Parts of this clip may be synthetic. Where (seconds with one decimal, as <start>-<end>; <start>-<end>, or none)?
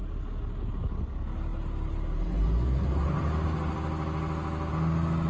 none